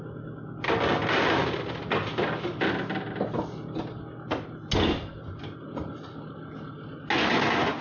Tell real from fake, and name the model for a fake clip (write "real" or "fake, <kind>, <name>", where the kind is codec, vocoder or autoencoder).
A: real